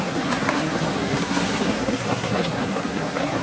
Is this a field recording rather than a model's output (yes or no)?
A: no